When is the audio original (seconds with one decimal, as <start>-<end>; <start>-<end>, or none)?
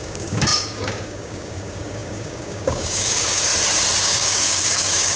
3.5-4.0